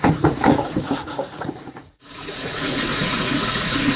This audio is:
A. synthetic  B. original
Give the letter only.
A